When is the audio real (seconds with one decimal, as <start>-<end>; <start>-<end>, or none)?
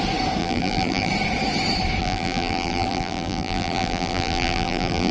0.0-0.4; 1.1-2.0